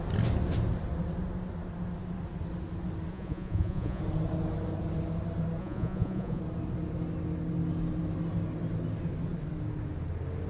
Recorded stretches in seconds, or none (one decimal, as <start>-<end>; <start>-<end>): 0.0-3.1; 4.0-5.6; 6.4-10.5